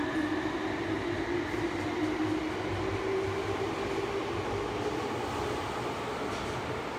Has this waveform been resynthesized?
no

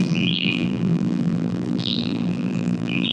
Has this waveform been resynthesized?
yes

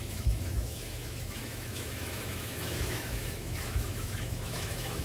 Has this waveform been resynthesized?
yes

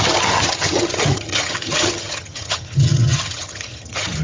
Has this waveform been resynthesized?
yes